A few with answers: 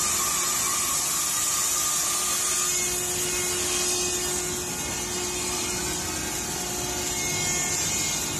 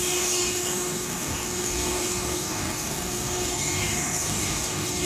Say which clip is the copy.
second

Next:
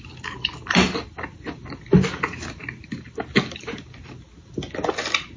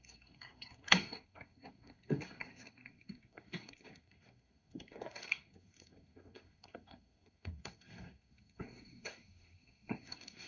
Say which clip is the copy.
second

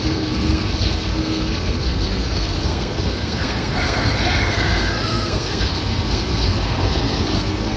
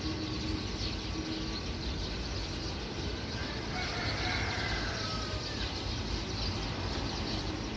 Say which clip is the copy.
first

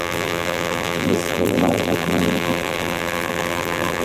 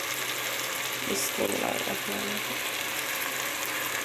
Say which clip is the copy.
first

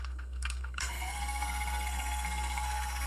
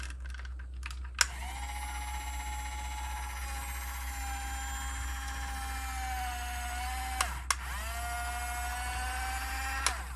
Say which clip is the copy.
first